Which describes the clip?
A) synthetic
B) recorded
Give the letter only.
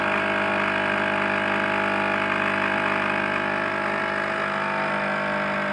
B